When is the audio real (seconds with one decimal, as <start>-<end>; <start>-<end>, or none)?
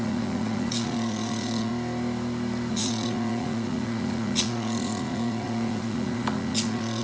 1.7-2.7